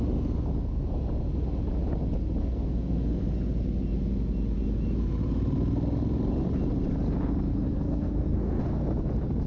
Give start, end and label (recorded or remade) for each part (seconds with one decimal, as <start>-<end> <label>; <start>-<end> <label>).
0.0-2.4 recorded; 2.4-3.2 remade; 3.2-7.5 recorded; 7.5-8.6 remade; 8.6-9.5 recorded